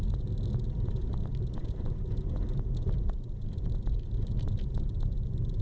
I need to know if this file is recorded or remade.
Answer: recorded